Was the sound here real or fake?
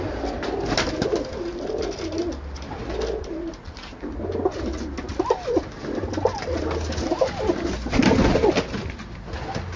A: real